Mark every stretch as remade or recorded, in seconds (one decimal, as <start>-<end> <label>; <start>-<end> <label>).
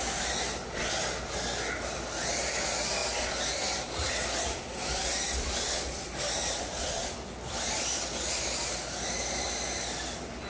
0.0-10.5 recorded